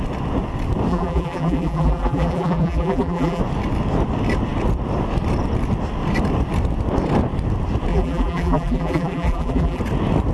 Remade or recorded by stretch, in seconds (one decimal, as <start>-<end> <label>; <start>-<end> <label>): 0.0-0.9 recorded; 0.9-3.4 remade; 3.4-7.9 recorded; 7.9-9.8 remade; 9.8-10.3 recorded